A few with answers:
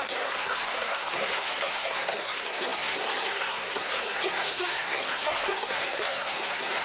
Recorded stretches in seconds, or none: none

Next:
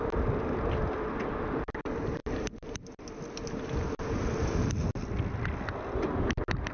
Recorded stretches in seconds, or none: 0.0-6.7

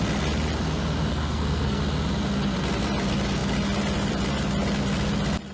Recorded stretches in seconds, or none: 0.0-1.1; 1.8-5.5

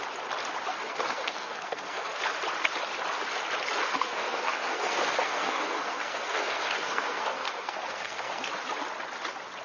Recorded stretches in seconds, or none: 0.0-0.7; 2.2-3.8; 8.5-9.6

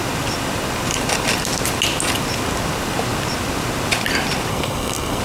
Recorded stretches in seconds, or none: 0.0-4.5

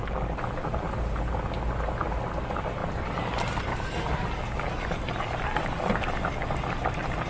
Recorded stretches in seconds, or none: 0.0-7.3

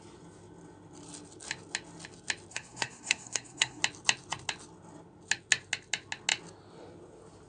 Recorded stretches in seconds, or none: 0.0-2.5; 3.8-7.5